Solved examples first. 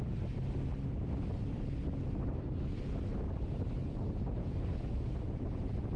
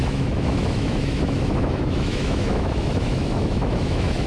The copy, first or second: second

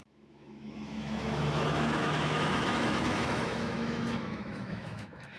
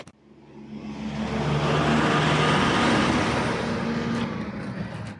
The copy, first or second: first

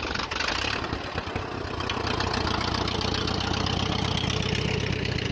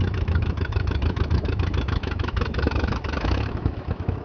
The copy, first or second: second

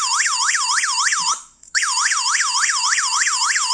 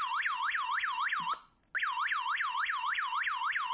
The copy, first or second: first